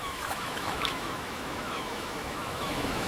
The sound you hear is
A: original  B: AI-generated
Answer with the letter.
B